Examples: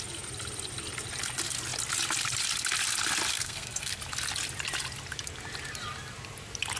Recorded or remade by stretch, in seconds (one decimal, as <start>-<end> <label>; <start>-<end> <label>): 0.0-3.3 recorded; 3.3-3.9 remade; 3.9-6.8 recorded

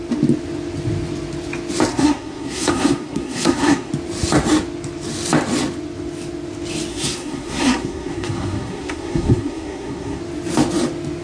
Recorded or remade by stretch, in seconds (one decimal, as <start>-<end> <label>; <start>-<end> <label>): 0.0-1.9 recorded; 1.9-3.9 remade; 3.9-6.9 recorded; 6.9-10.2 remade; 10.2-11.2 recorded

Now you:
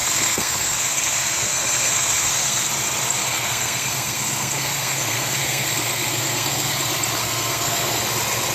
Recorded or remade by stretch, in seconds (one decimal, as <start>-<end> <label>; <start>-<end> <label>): 0.0-2.7 remade; 2.7-3.2 recorded; 3.2-6.7 remade; 6.7-7.2 recorded; 7.2-8.0 remade; 8.0-8.5 recorded

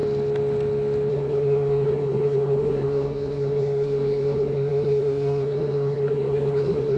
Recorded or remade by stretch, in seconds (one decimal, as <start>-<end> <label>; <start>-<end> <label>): 0.0-1.1 recorded; 1.1-7.0 remade

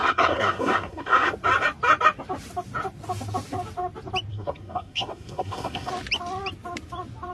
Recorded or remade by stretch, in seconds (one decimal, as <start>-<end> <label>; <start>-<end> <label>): 0.0-1.3 remade; 1.3-4.3 recorded; 4.3-5.9 remade; 5.9-7.3 recorded

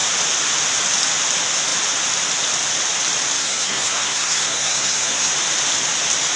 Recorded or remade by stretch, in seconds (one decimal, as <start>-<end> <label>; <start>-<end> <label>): 0.0-3.4 recorded; 3.4-5.3 remade; 5.3-6.4 recorded